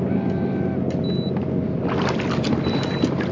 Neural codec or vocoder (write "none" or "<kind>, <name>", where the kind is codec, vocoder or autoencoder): none